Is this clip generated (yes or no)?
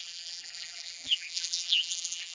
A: yes